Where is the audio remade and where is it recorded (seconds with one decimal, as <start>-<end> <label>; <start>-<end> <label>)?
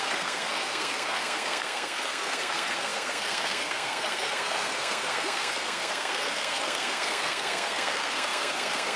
0.0-9.0 remade